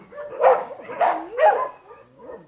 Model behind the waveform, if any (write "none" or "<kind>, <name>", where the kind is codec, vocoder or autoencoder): codec, DAC